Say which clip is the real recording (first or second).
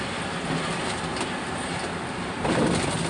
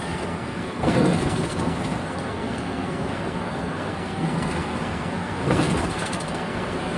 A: first